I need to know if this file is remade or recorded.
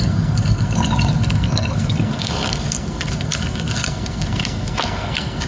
remade